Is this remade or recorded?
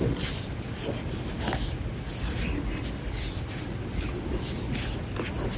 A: recorded